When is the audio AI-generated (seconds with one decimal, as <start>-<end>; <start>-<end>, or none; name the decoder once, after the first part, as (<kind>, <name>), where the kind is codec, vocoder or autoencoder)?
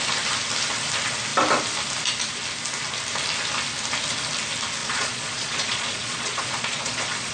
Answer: 4.8-7.3 (vocoder, Vocos)